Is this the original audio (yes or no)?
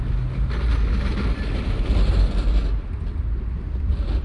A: yes